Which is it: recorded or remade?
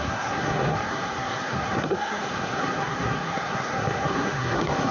remade